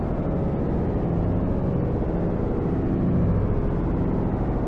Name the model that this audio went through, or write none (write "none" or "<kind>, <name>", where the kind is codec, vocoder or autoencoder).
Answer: none